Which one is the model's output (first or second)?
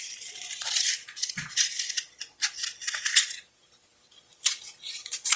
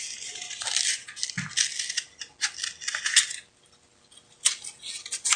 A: first